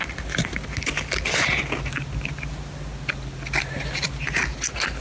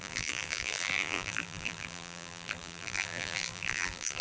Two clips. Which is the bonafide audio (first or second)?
first